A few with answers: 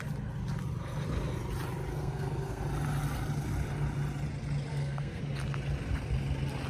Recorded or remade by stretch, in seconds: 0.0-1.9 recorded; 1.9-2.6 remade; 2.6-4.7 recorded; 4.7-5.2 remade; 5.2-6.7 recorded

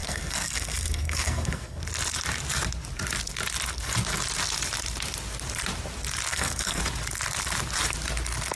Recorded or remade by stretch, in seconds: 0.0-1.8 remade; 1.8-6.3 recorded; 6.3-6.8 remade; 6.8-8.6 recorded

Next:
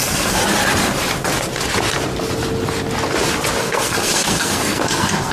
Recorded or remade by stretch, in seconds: 0.0-0.4 remade; 0.4-3.6 recorded; 3.6-5.3 remade

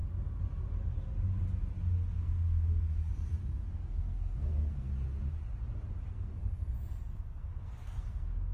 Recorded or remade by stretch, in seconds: 0.0-2.1 recorded; 2.1-3.1 remade; 3.1-3.7 recorded; 3.7-4.9 remade; 4.9-6.1 recorded; 6.1-8.5 remade